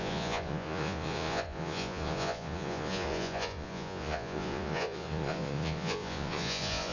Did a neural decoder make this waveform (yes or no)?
yes